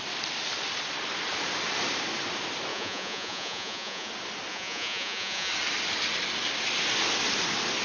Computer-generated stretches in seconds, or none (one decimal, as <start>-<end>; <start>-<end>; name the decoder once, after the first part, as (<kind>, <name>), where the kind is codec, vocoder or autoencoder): 2.7-4.1 (vocoder, Vocos); 4.5-5.5